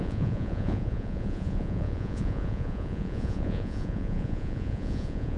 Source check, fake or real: fake